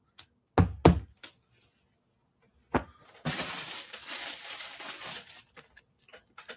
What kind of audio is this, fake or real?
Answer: real